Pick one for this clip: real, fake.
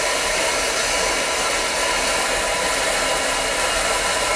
real